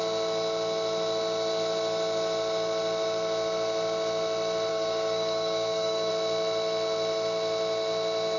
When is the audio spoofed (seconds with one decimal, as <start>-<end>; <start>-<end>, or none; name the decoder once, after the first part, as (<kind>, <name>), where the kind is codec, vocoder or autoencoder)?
4.7-6.1 (codec, DAC)